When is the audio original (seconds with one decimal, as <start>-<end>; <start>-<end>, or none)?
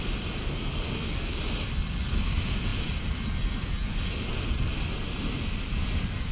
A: 0.0-0.4; 1.4-6.3